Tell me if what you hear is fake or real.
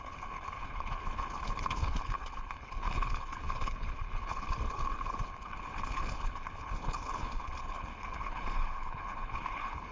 fake